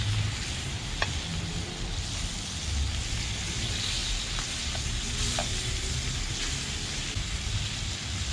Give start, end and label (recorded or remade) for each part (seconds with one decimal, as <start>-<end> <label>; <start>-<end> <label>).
0.0-8.3 recorded